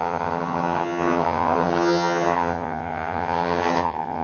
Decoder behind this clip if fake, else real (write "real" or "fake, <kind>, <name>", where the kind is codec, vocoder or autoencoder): fake, vocoder, HiFi-GAN